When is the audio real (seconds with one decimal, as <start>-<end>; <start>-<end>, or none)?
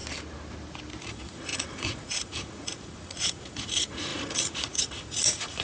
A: 0.0-1.0